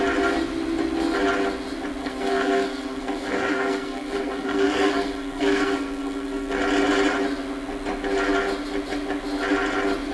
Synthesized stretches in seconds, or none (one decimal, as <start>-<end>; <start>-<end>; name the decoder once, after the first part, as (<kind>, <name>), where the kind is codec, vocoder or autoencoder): 2.0-6.6 (codec, SNAC)